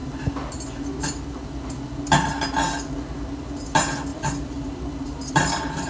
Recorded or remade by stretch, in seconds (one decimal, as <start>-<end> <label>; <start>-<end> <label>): 0.0-4.1 recorded; 4.1-5.9 remade